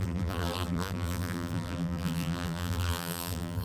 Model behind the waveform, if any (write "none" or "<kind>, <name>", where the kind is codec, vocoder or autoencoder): vocoder, BigVGAN v2